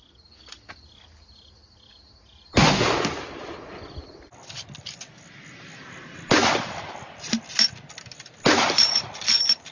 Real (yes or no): yes